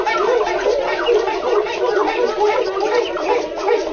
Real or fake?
real